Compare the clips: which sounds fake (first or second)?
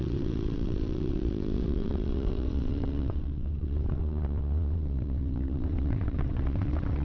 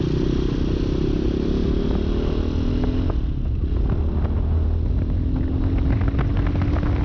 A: first